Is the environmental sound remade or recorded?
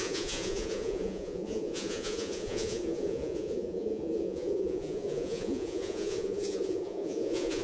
remade